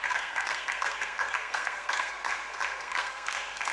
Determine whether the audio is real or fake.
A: fake